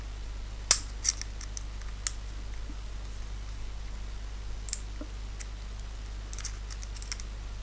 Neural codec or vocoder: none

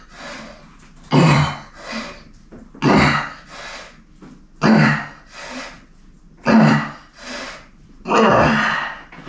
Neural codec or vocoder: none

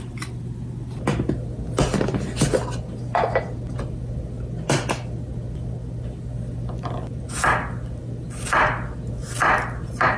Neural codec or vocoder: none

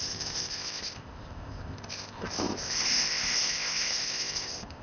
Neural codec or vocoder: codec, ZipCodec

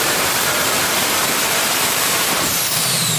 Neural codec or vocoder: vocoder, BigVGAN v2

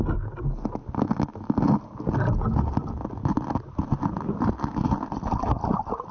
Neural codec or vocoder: none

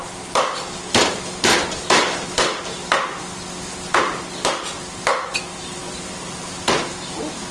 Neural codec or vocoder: none